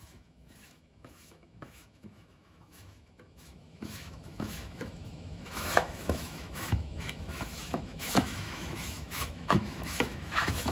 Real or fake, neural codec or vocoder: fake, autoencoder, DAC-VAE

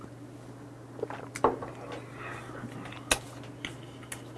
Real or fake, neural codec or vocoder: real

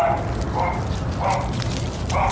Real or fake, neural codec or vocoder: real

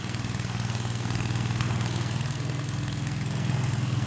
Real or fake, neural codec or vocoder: fake, codec, SNAC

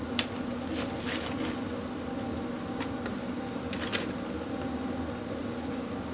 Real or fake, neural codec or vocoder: real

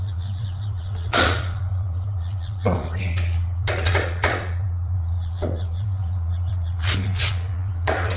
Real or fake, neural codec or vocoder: fake, vocoder, Vocos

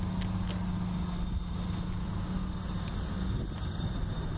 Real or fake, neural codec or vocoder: real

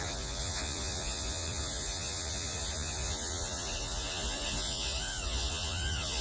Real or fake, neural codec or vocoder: fake, vocoder, Vocos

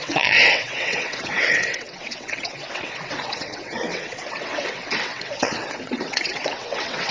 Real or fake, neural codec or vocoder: fake, vocoder, WaveNeXt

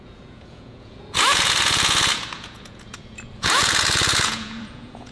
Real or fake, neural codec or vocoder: fake, vocoder, Vocos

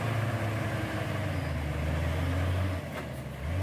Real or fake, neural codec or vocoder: real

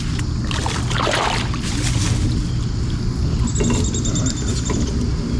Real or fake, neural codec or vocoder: real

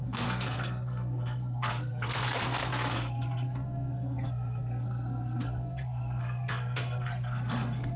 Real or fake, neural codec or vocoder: fake, codec, SNAC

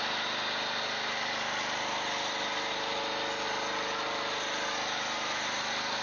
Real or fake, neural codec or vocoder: real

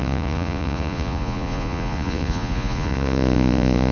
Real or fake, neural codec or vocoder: fake, vocoder, Vocos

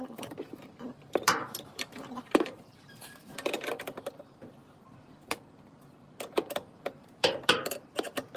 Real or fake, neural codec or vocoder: fake, vocoder, BigVGAN v2